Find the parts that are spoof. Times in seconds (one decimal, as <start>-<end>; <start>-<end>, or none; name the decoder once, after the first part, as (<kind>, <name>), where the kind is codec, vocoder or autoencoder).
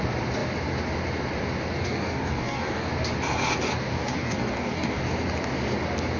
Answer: 1.8-2.9 (codec, DAC); 3.7-5.0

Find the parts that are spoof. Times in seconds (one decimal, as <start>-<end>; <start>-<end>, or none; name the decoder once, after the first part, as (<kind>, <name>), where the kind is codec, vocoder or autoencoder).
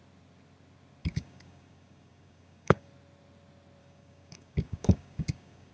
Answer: 1.0-2.9 (codec, DAC); 3.8-5.7